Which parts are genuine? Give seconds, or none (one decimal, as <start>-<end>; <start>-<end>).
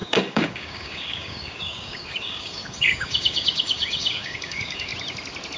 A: 4.9-5.6